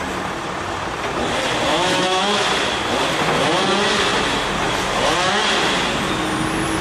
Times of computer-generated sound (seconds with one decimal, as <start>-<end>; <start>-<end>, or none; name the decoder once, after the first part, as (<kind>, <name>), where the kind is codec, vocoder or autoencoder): 1.7-2.5 (autoencoder, DAC-VAE)